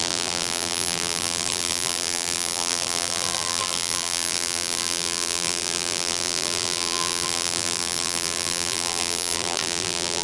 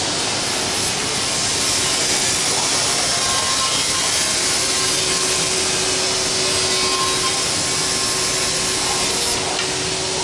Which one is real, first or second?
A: second